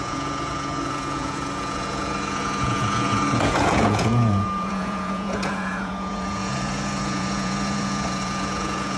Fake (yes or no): yes